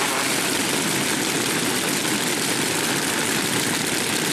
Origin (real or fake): real